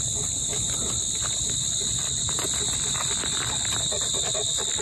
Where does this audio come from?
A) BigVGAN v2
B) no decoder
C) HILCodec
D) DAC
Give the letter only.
B